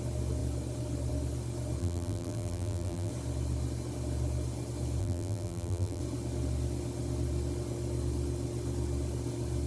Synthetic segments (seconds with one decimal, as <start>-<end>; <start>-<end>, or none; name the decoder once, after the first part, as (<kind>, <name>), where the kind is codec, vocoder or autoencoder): 1.8-3.1 (vocoder, BigVGAN v2); 5.0-6.0